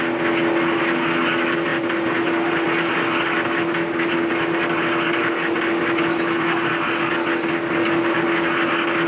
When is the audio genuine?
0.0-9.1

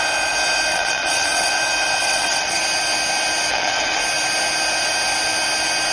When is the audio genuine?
0.0-0.7; 1.5-2.0; 2.6-3.5; 4.0-5.9